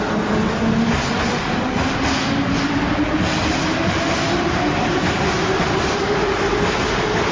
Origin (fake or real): real